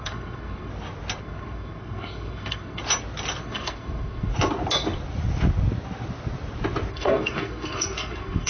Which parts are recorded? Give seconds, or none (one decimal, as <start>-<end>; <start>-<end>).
0.7-1.2; 2.8-3.4; 4.3-6.9